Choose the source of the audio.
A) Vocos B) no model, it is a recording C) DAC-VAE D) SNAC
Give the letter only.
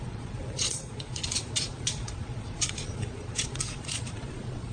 A